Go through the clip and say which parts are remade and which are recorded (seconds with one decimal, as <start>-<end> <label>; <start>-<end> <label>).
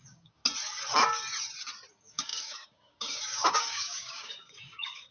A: 0.0-0.4 remade; 0.4-1.9 recorded; 1.9-5.1 remade